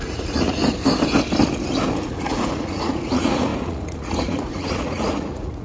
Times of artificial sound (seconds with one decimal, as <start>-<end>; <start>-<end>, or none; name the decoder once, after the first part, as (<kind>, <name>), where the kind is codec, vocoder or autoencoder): 0.0-0.6 (vocoder, Vocos); 2.0-5.6